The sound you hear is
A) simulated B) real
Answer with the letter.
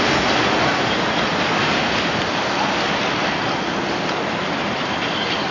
B